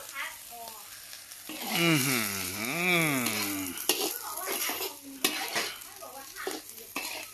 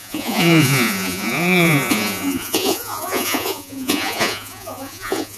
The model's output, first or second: second